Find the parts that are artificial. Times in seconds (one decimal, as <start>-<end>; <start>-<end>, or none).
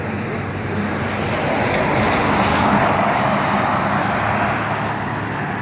2.5-3.2